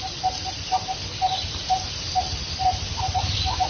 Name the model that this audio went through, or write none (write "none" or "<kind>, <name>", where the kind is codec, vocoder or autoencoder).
none